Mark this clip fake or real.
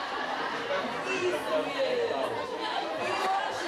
real